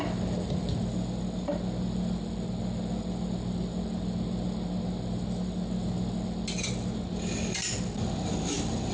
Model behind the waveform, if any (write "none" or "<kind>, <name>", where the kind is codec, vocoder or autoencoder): none